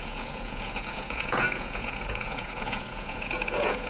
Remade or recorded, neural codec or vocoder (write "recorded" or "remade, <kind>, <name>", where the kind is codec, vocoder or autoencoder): remade, vocoder, Vocos